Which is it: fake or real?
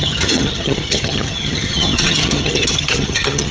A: fake